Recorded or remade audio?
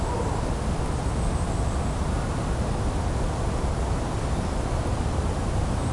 recorded